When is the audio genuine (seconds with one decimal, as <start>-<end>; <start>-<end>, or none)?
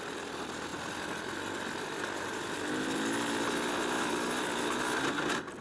0.0-5.6